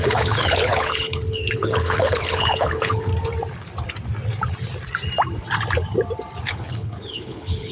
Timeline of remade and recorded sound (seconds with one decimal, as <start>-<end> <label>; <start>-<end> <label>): 0.0-3.1 remade; 3.1-6.4 recorded; 6.4-7.7 remade

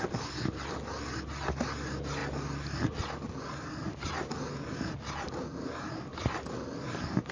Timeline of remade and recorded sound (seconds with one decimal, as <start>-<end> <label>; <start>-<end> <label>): 0.0-7.3 recorded